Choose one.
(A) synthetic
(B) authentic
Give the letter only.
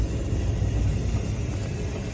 B